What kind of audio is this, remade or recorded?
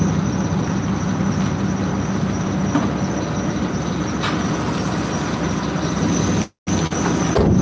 recorded